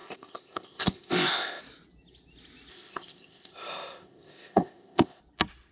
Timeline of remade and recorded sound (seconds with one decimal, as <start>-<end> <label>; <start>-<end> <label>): 0.0-1.6 remade; 1.6-2.7 recorded; 2.7-5.2 remade; 5.2-5.7 recorded